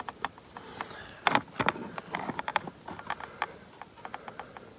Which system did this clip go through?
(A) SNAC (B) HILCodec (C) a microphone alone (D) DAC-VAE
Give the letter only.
C